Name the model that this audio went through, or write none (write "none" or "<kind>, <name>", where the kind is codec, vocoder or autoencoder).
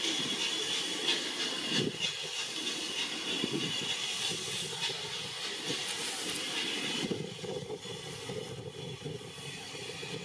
none